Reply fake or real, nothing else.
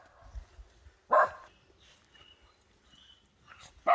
real